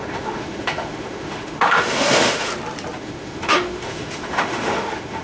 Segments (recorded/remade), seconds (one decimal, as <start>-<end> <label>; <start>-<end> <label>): 0.0-2.5 remade; 2.5-3.0 recorded; 3.0-5.2 remade